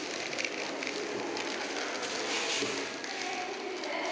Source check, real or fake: real